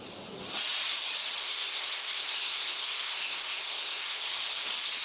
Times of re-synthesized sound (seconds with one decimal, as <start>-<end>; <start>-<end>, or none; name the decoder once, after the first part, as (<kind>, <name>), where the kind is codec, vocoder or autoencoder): 1.4-4.4 (codec, SNAC)